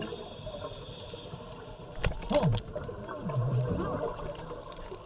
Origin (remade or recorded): recorded